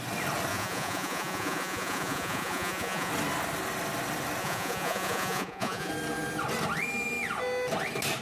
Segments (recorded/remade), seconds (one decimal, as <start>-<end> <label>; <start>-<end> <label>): 0.0-0.5 recorded; 0.5-3.1 remade; 3.1-4.4 recorded; 4.4-5.9 remade; 5.9-8.2 recorded